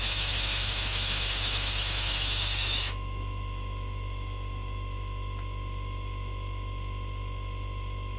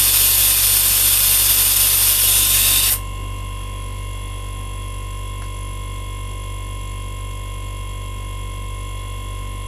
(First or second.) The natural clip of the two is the second